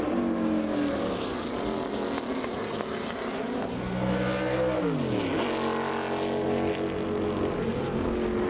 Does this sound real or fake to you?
real